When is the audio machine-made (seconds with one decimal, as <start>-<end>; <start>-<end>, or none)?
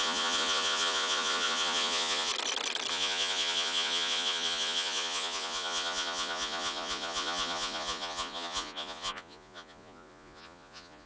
0.0-2.3; 2.9-11.1